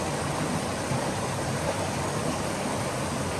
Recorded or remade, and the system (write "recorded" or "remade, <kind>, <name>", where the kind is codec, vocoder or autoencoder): recorded